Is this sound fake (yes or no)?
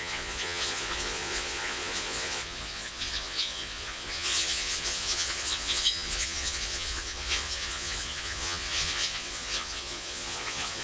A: yes